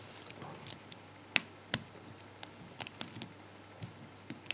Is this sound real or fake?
real